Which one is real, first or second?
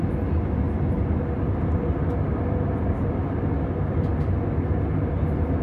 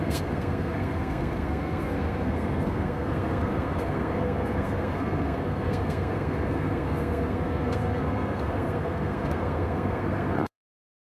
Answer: first